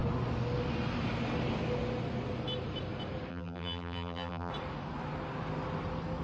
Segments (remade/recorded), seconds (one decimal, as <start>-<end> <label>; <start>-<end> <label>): 0.0-3.3 recorded; 3.3-4.5 remade; 4.5-6.2 recorded

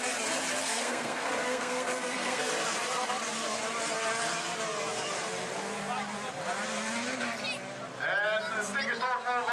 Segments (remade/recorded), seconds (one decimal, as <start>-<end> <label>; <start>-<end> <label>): 0.0-0.6 recorded; 0.6-2.5 remade; 2.5-9.5 recorded

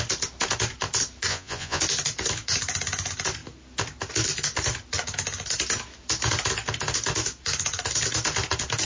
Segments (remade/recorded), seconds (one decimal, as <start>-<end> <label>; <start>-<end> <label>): 0.0-1.3 recorded; 1.3-1.8 remade; 1.8-8.8 recorded

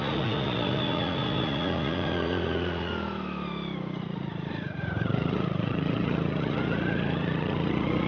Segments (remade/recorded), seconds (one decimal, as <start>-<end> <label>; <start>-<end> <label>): 0.0-2.9 remade; 2.9-4.0 recorded; 4.0-8.1 remade